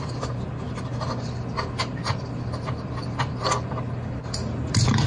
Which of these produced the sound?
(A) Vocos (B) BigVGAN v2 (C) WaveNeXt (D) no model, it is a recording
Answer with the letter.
D